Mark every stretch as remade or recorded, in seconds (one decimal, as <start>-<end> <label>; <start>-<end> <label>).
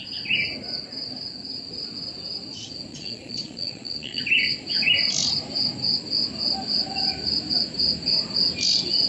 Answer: 0.0-2.9 recorded; 2.9-4.2 remade; 4.2-9.1 recorded